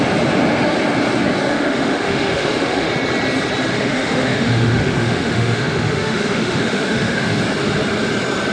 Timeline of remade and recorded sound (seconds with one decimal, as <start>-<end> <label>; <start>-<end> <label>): 0.0-1.5 recorded; 1.5-2.9 remade; 2.9-3.7 recorded; 3.7-7.4 remade; 7.4-8.5 recorded